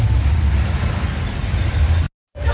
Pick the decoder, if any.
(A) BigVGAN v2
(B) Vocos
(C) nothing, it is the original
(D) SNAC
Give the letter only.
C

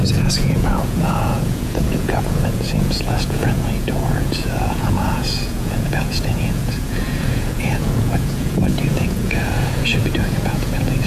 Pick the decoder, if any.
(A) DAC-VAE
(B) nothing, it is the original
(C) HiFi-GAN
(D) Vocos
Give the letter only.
D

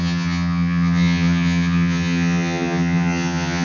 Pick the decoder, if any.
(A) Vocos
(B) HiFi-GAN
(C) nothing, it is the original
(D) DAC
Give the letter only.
B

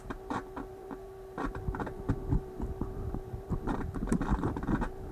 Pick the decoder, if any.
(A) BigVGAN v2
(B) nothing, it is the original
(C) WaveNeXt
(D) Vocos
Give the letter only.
A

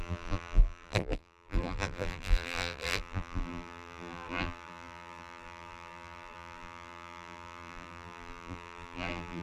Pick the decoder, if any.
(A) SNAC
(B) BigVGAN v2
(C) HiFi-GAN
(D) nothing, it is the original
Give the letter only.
B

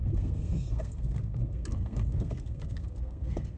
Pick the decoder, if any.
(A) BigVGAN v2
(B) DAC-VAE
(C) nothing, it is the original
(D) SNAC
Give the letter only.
D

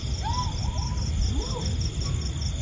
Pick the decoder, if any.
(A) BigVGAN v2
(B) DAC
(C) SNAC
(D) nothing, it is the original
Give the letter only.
D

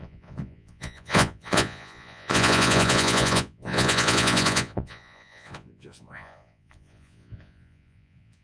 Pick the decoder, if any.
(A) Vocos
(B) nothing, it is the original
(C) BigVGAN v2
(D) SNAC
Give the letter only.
A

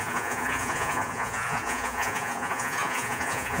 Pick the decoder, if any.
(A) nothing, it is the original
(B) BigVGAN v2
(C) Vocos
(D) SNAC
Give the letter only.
C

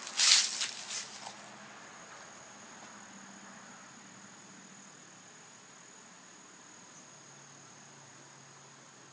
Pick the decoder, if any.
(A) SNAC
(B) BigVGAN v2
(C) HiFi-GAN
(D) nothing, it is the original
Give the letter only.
D